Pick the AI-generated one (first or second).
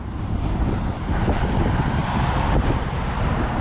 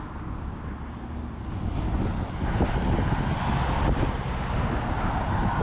first